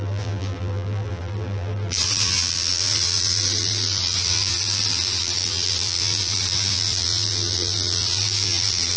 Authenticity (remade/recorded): remade